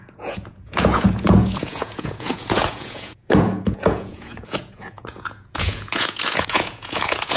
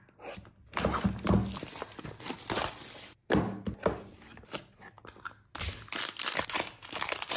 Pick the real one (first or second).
second